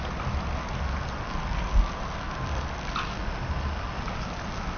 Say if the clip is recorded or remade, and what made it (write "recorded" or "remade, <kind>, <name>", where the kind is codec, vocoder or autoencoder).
recorded